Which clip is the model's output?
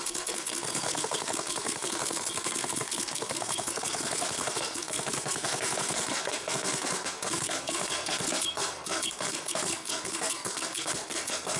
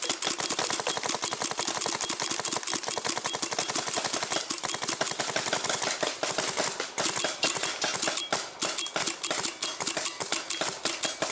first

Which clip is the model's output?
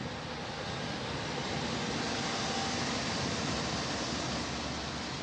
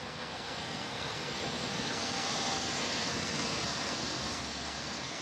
second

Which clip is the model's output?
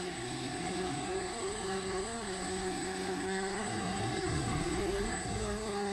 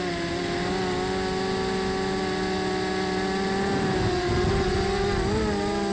first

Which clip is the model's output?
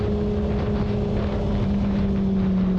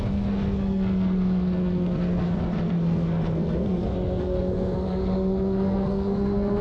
second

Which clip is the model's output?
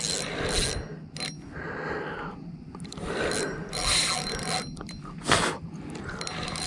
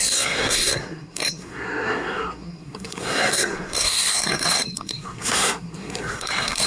second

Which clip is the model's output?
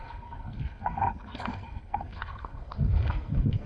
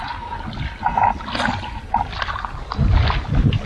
first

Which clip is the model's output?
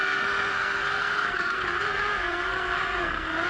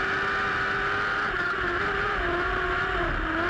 first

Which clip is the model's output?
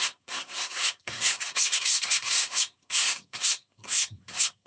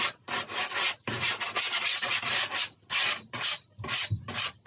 first